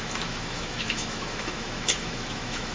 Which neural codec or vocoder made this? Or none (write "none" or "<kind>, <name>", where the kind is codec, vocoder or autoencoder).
autoencoder, DAC-VAE